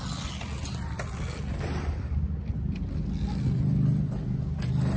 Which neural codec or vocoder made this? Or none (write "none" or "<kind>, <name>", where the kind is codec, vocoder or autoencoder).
none